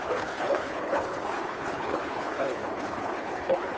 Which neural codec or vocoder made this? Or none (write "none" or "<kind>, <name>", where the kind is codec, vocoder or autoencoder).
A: codec, HILCodec